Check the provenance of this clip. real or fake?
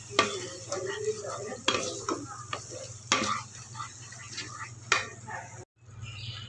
real